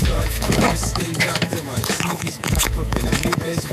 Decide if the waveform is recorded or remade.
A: remade